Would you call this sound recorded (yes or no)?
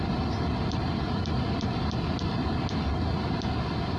yes